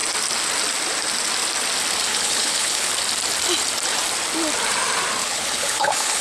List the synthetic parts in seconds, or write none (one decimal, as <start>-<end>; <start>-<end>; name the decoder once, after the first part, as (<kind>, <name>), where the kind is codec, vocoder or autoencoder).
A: 2.1-2.9 (codec, HILCodec); 5.2-6.2